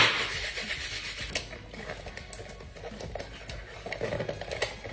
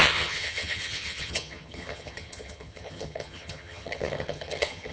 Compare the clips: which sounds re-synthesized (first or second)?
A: second